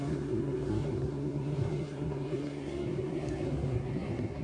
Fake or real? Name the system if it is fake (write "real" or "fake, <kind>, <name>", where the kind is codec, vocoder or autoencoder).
fake, codec, SNAC